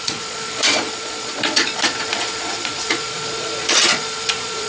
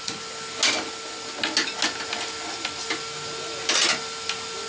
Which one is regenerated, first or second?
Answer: first